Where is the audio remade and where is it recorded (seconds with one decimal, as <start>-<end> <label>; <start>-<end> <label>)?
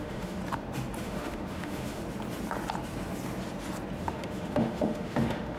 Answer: 0.0-0.4 remade; 0.4-1.0 recorded; 1.0-2.0 remade; 2.0-4.0 recorded; 4.0-5.6 remade